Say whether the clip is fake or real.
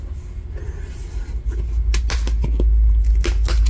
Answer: real